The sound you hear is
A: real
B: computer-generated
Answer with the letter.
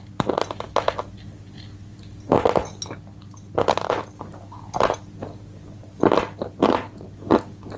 A